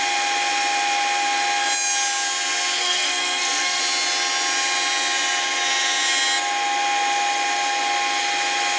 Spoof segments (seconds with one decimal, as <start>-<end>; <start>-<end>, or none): 2.8-3.8

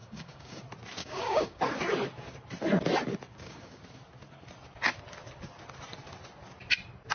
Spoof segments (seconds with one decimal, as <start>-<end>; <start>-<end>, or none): 0.0-0.6; 1.0-1.6; 3.3-3.8

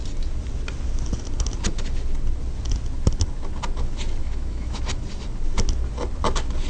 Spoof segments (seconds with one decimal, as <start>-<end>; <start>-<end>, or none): 4.2-4.8